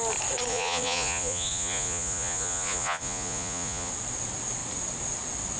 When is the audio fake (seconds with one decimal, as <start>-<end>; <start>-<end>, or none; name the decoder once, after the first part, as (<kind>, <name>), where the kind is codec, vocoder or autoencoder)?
0.5-3.9 (vocoder, Vocos)